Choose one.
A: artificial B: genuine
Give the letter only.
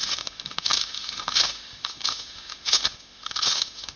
A